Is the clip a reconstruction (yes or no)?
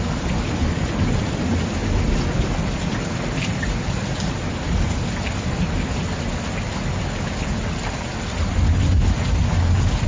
no